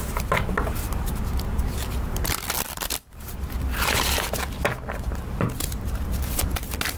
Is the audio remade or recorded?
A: recorded